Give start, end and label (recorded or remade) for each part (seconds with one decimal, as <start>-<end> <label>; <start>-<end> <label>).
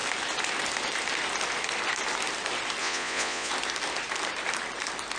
0.0-2.8 recorded; 2.8-3.5 remade; 3.5-5.2 recorded